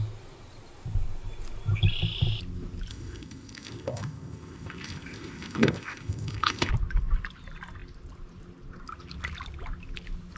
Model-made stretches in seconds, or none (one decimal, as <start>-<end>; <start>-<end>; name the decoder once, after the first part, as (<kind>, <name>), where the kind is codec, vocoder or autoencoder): 2.9-6.7 (codec, ZipCodec)